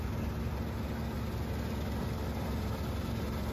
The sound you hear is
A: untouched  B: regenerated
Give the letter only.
A